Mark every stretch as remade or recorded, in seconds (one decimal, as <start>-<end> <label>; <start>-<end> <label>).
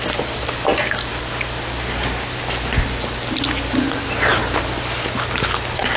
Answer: 0.0-6.0 recorded